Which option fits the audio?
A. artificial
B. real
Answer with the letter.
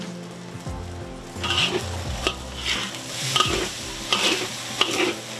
B